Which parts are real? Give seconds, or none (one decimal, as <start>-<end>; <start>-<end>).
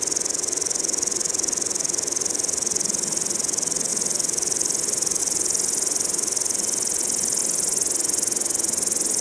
0.0-9.2